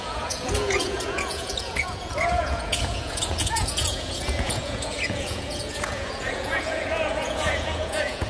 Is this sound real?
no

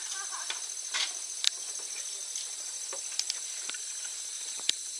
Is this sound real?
yes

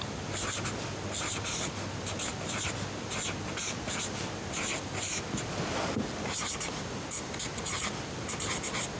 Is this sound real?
yes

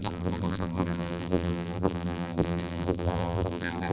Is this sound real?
no